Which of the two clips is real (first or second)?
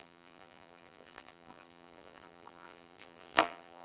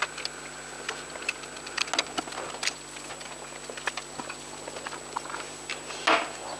second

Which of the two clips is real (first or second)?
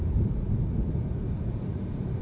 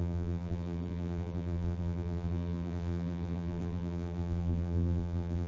first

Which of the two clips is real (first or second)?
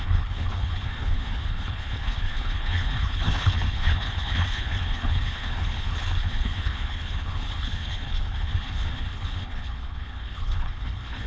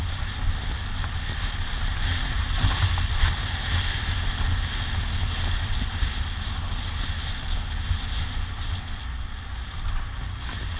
second